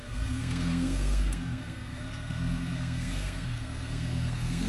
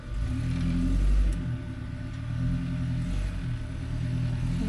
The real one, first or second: second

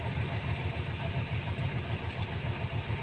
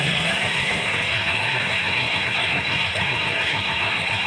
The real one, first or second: first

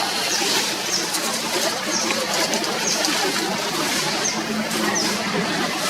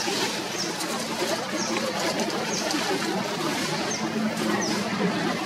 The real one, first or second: second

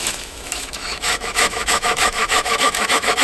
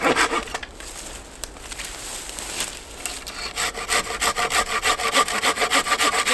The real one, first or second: second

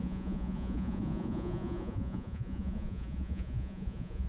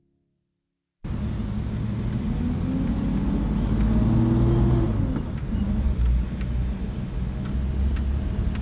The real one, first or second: second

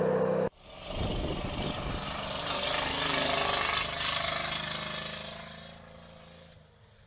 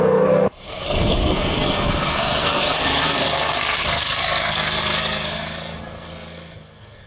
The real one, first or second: first